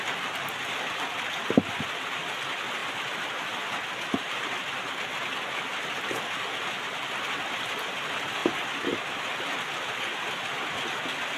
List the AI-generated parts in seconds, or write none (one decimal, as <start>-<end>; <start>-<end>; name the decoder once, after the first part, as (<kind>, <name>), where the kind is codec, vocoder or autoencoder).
2.8-3.9 (vocoder, BigVGAN v2)